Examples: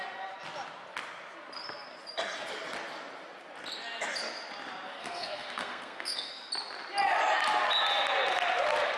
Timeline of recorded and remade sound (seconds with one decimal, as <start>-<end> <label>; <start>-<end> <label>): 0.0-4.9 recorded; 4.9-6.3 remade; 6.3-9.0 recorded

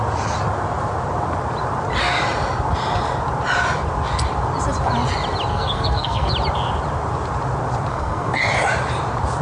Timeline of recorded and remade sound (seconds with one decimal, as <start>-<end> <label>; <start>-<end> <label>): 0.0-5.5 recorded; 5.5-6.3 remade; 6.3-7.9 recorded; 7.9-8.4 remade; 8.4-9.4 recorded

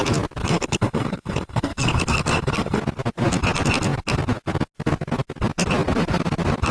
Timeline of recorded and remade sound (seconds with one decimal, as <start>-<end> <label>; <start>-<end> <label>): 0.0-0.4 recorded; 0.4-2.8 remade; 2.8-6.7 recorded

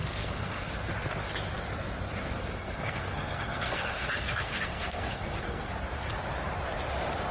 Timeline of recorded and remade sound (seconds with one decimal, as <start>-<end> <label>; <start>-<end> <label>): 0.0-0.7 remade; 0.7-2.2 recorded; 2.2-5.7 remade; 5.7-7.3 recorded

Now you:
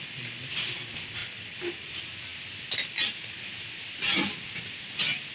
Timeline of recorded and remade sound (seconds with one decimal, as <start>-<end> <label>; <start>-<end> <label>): 0.0-5.3 recorded

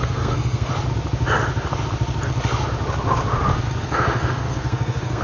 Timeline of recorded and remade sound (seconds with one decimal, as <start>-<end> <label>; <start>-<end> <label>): 0.0-0.7 remade; 0.7-3.8 recorded; 3.8-5.2 remade

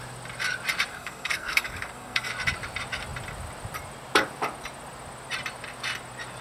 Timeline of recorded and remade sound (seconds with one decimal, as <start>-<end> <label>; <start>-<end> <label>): 0.0-0.9 recorded; 0.9-2.3 remade; 2.3-6.4 recorded